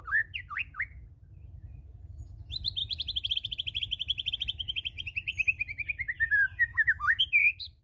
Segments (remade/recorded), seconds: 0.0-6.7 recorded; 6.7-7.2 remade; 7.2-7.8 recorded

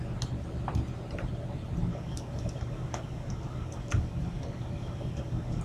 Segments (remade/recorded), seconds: 0.0-1.9 recorded; 1.9-5.6 remade

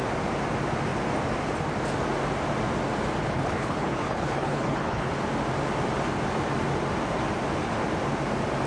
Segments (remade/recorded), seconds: 0.0-3.2 recorded; 3.2-5.1 remade; 5.1-8.7 recorded

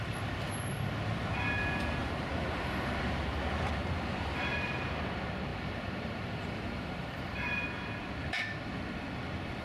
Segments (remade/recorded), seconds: 0.0-2.0 recorded; 2.0-3.0 remade; 3.0-5.5 recorded; 5.5-7.3 remade; 7.3-9.6 recorded

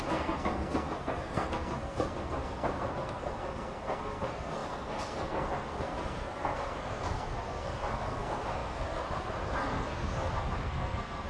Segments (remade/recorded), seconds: 0.0-11.3 remade

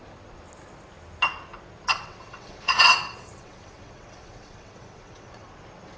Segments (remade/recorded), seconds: 0.0-1.9 recorded; 1.9-5.5 remade; 5.5-6.0 recorded